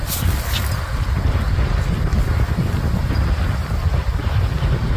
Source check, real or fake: real